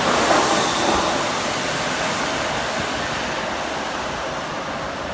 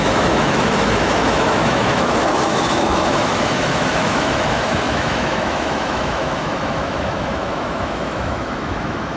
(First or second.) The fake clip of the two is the second